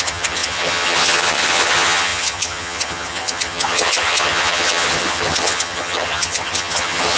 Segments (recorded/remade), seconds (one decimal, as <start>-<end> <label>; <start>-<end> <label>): 0.0-7.2 remade

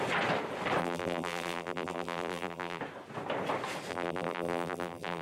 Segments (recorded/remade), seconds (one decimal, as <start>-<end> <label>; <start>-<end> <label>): 0.0-0.8 recorded; 0.8-2.8 remade; 2.8-3.9 recorded; 3.9-5.2 remade

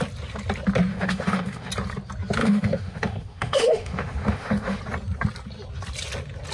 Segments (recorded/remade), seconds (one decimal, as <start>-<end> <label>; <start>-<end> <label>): 0.0-0.9 recorded; 0.9-1.7 remade; 1.7-2.4 recorded; 2.4-4.8 remade; 4.8-6.5 recorded

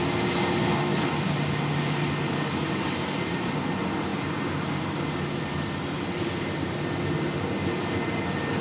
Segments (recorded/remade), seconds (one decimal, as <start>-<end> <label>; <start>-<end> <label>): 0.0-8.6 recorded

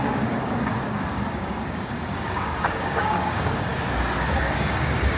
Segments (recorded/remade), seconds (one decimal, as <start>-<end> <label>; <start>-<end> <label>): 0.0-3.7 remade; 3.7-4.3 recorded; 4.3-5.2 remade

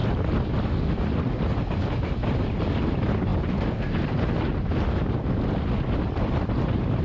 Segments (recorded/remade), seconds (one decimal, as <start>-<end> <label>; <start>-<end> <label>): 0.0-7.0 recorded

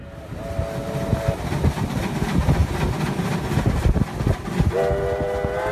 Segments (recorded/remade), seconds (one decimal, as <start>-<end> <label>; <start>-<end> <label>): 0.0-5.7 recorded